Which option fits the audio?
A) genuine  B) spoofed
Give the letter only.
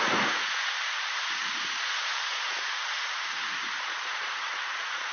B